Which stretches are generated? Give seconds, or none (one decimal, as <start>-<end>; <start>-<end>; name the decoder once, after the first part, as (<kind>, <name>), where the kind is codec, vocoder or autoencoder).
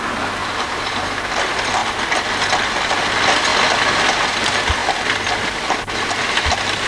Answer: 0.4-1.1 (vocoder, BigVGAN v2)